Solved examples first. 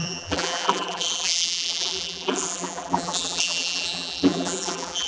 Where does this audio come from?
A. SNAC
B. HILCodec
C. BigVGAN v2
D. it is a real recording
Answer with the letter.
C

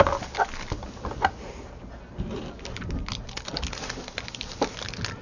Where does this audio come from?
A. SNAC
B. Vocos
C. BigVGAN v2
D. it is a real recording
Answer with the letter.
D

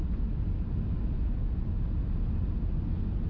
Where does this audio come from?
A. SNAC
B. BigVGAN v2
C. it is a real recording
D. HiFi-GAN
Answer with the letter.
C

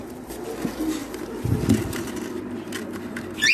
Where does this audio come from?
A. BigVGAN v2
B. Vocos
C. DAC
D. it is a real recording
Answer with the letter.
D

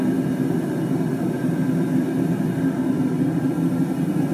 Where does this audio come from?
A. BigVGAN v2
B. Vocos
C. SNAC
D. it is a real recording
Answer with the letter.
D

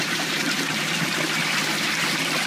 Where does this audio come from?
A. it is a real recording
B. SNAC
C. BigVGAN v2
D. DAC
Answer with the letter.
C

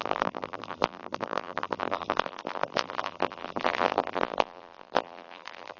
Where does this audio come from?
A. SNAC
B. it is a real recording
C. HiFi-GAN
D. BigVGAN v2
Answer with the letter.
D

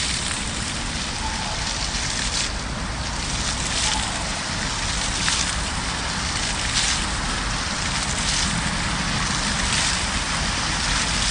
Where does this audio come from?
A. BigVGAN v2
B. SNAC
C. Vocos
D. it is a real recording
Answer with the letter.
D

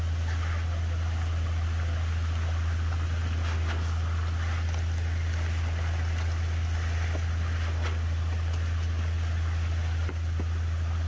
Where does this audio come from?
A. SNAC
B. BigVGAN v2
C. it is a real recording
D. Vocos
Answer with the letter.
C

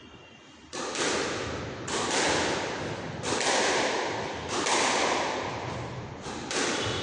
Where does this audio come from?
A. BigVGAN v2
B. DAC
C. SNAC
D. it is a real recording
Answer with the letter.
A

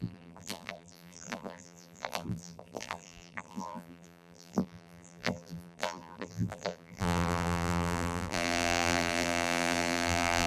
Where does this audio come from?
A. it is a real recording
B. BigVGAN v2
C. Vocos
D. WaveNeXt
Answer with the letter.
B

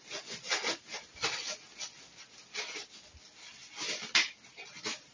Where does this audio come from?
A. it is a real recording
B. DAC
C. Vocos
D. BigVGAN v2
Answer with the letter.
A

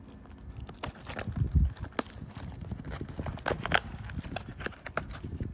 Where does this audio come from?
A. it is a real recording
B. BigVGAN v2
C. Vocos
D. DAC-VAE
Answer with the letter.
A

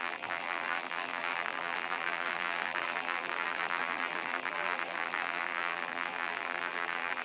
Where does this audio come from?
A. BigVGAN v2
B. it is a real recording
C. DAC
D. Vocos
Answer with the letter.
A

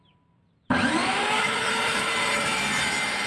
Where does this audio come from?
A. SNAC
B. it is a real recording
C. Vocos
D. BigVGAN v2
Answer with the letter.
D